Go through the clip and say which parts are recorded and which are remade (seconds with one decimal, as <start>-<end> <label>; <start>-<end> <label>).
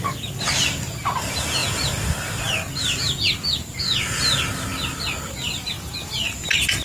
0.0-6.8 recorded